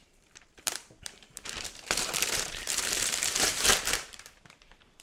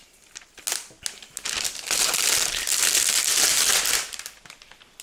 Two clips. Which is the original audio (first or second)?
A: second